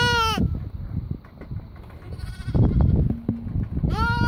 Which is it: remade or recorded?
recorded